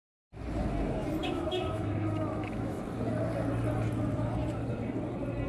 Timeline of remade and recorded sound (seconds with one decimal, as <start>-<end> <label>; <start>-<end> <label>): 0.0-1.2 recorded; 1.2-2.8 remade; 2.8-5.5 recorded